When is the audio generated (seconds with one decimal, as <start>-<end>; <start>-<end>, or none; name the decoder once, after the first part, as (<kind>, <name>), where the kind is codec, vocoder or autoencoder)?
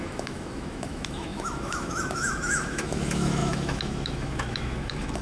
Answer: 0.0-5.2 (autoencoder, DAC-VAE)